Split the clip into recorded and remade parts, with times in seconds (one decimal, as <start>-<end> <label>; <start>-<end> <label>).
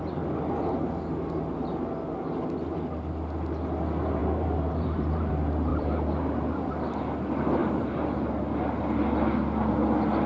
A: 0.0-4.2 recorded; 4.2-5.3 remade; 5.3-5.7 recorded; 5.7-6.7 remade; 6.7-7.6 recorded; 7.6-8.3 remade; 8.3-10.3 recorded